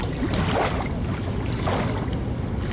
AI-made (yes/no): no